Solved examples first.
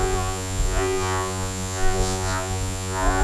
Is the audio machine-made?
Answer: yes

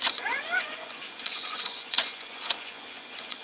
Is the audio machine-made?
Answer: yes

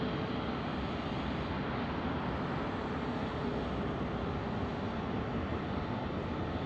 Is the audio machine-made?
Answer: no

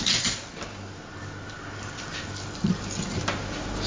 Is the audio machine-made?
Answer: no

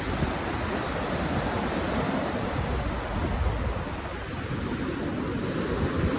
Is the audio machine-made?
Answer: no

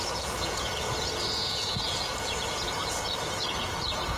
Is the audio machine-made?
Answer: yes